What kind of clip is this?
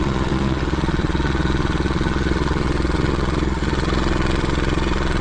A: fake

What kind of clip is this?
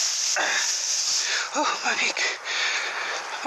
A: real